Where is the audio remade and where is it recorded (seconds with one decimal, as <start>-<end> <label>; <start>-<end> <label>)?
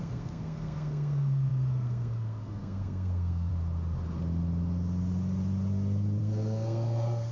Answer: 0.0-3.5 remade; 3.5-6.2 recorded; 6.2-7.3 remade